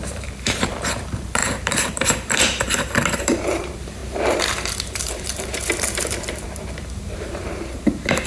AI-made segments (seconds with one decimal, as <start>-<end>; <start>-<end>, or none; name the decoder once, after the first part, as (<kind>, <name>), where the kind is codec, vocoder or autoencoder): 0.0-8.3 (vocoder, BigVGAN v2)